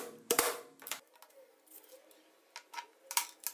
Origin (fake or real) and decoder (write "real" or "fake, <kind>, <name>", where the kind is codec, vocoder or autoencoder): real